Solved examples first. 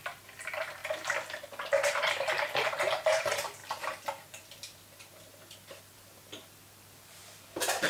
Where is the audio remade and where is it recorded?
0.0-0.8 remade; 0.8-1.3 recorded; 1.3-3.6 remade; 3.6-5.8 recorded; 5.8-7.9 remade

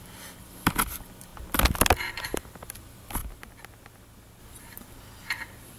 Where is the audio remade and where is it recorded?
0.0-1.3 remade; 1.3-2.1 recorded; 2.1-3.2 remade; 3.2-4.4 recorded; 4.4-5.8 remade

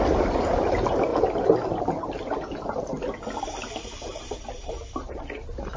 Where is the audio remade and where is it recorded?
0.0-5.8 remade